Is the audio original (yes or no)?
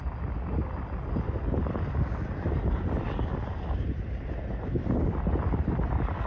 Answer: yes